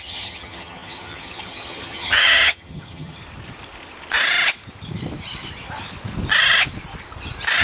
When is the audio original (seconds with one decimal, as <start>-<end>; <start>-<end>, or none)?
3.2-7.6